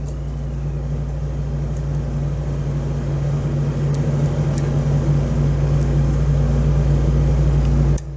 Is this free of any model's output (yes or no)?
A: yes